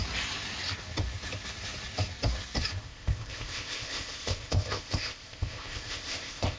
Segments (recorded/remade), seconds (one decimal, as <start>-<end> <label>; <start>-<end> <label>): 0.0-2.8 recorded; 2.8-6.6 remade